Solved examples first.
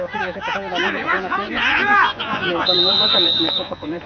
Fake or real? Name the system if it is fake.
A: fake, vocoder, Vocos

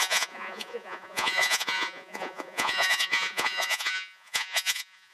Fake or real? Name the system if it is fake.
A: fake, vocoder, Vocos